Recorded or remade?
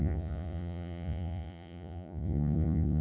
remade